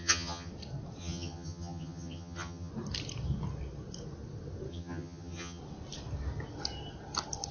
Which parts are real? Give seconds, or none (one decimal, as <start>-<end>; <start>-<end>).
0.5-1.0; 2.7-4.7; 5.6-7.5